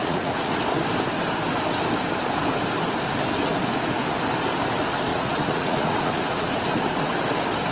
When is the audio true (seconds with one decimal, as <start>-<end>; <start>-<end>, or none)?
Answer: 0.6-5.1; 6.8-7.7